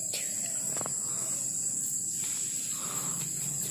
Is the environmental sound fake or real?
real